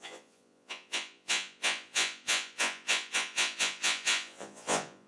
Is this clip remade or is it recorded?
remade